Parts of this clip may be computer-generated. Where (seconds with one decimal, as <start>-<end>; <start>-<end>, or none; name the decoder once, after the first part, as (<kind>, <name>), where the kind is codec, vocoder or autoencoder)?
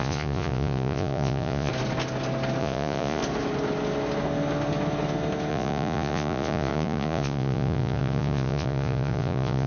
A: 0.0-1.7 (vocoder, Vocos); 2.6-3.2; 5.5-9.7